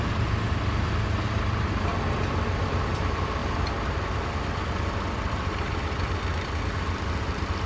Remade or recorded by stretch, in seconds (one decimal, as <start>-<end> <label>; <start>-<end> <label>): 0.0-1.9 remade; 1.9-2.6 recorded; 2.6-3.4 remade; 3.4-7.2 recorded; 7.2-7.7 remade